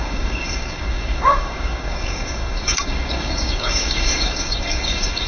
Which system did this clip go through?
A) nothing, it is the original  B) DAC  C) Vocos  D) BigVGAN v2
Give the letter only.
B